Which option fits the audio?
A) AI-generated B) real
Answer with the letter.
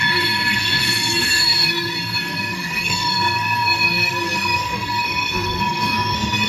A